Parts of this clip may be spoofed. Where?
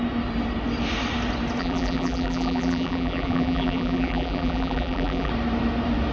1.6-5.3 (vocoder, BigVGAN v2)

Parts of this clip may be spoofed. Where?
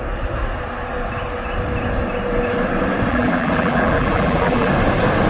3.1-4.7 (vocoder, BigVGAN v2)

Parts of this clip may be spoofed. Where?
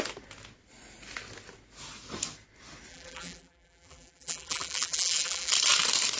2.9-5.5 (vocoder, BigVGAN v2)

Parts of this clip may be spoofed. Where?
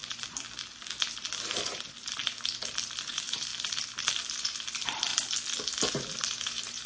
1.6-2.2 (vocoder, BigVGAN v2); 3.0-3.5; 4.3-5.1; 5.9-6.9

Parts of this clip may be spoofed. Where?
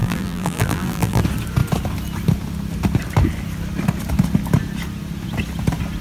0.0-1.2 (vocoder, BigVGAN v2)